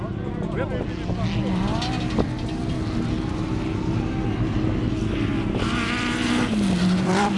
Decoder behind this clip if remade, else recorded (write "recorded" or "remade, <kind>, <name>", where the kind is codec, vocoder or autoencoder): recorded